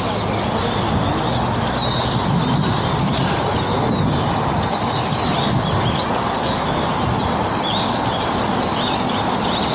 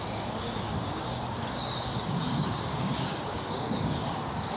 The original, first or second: first